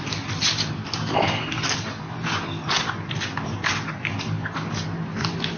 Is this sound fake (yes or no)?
no